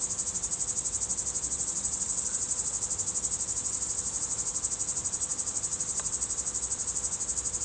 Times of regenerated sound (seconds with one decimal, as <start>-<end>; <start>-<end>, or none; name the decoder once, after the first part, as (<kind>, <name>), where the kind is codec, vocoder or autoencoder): none